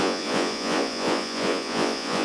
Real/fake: fake